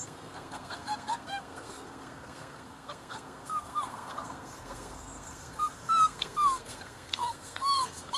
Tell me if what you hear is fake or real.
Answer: fake